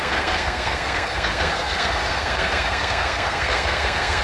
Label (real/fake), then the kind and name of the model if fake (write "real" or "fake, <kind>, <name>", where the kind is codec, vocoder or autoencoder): fake, codec, SNAC